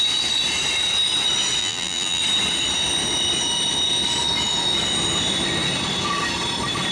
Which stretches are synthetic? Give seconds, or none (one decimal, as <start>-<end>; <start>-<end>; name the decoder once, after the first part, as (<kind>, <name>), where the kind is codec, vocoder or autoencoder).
1.6-2.2 (vocoder, BigVGAN v2)